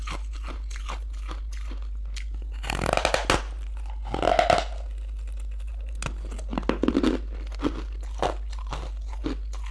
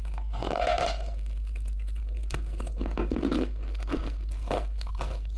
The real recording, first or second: first